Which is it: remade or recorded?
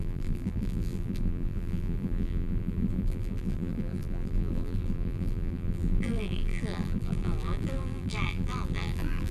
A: remade